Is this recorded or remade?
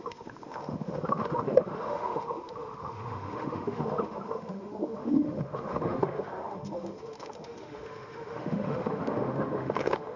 remade